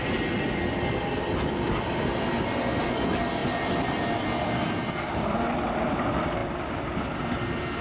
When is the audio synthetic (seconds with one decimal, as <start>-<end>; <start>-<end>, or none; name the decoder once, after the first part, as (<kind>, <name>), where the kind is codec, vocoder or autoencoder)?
none